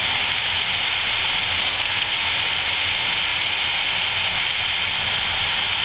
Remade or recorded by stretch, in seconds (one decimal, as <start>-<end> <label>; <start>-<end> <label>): 0.0-1.6 recorded; 1.6-2.1 remade; 2.1-5.8 recorded